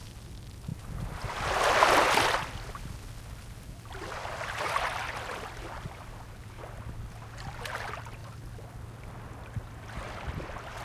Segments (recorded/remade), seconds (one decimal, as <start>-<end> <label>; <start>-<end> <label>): 0.0-10.8 recorded